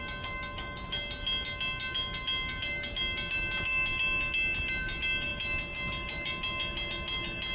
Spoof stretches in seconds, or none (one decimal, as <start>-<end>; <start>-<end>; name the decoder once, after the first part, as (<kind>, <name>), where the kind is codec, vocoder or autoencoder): none